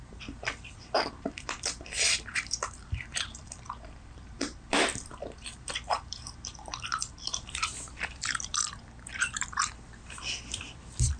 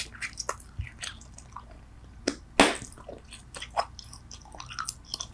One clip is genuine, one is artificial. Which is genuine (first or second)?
second